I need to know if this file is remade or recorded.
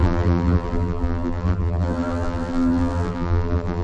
remade